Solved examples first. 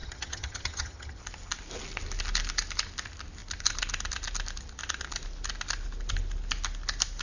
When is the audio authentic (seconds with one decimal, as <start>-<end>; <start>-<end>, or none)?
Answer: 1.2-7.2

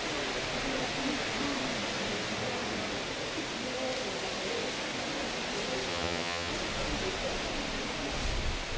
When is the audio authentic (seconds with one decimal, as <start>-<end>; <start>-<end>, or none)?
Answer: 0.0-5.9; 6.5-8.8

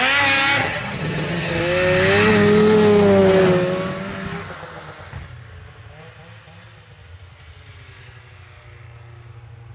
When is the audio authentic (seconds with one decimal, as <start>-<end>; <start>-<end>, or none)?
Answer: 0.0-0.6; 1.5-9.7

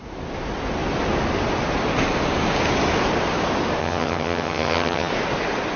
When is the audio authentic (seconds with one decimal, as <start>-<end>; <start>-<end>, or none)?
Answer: 0.0-3.8; 5.1-5.8

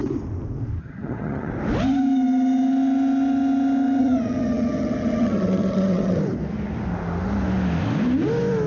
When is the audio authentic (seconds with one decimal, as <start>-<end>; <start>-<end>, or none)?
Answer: 0.0-0.8; 1.5-4.0; 6.2-8.7